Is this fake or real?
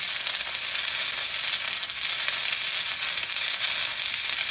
real